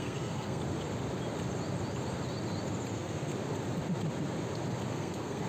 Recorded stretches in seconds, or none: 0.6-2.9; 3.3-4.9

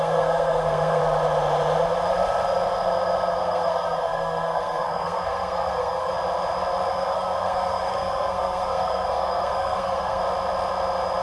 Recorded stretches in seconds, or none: 1.0-3.4; 6.1-6.9; 10.2-11.2

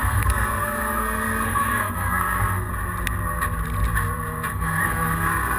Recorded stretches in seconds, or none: 2.7-4.5

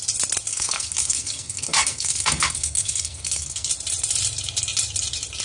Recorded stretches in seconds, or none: 0.0-0.5; 3.7-5.4

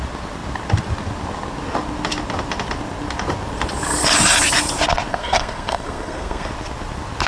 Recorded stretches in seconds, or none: 0.0-5.1; 6.5-7.3

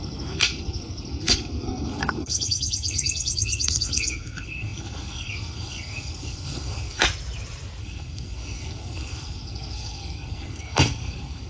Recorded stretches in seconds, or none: 7.0-7.8

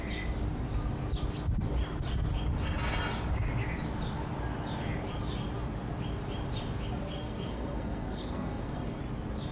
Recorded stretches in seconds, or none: 0.0-7.2; 9.0-9.5

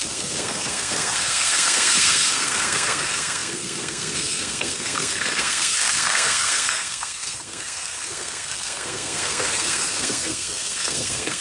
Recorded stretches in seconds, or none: none